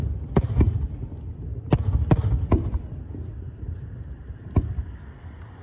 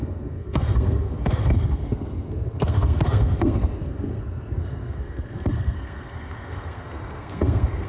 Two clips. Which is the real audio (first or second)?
first